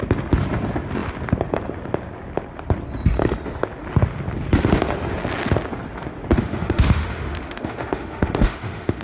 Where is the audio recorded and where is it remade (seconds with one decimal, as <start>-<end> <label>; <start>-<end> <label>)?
0.0-6.4 recorded; 6.4-9.0 remade